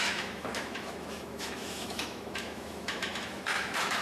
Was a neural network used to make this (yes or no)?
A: yes